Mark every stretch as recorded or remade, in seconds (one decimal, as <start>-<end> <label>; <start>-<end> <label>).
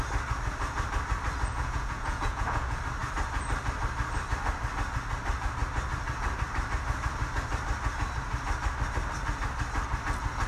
0.0-1.5 recorded; 1.5-2.8 remade; 2.8-10.5 recorded